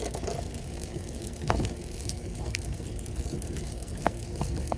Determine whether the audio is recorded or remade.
remade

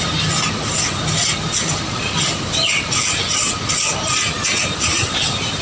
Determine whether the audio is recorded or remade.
recorded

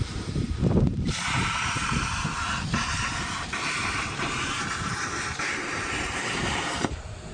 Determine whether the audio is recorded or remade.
remade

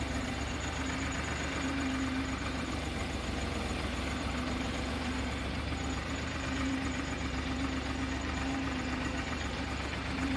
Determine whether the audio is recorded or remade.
remade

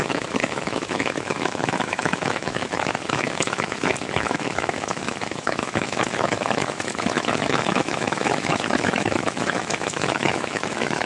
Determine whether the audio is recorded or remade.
remade